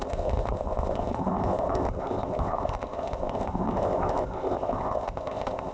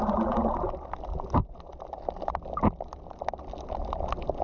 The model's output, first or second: first